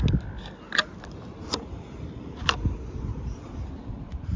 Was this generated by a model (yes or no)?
no